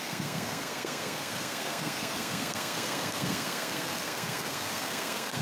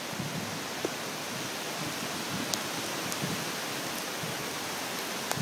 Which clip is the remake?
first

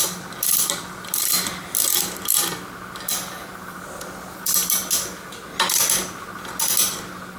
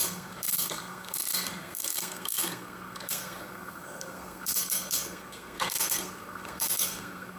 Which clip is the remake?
second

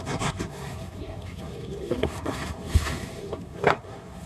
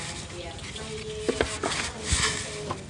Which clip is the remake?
first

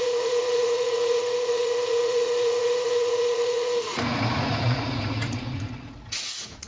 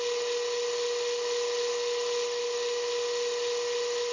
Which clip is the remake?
first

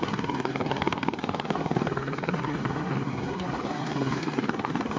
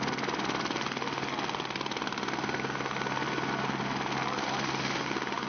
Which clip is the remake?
first